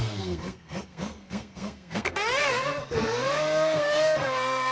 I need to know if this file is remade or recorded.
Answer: remade